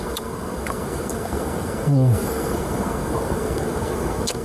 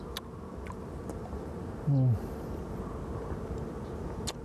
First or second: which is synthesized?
first